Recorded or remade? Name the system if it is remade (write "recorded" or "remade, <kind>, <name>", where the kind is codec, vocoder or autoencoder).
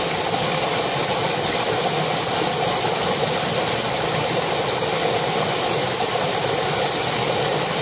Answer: recorded